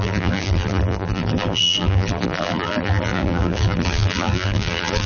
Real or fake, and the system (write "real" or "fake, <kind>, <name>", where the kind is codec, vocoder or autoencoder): fake, vocoder, BigVGAN v2